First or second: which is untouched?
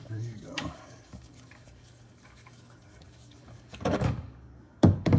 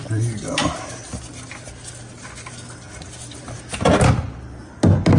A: second